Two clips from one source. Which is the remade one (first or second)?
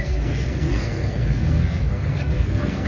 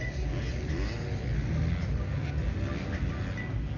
first